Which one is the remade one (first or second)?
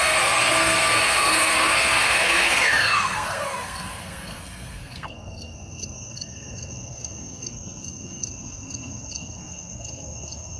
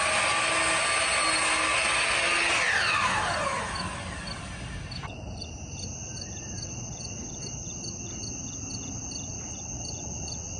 first